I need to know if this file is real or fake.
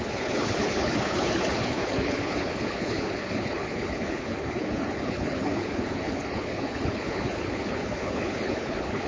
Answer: fake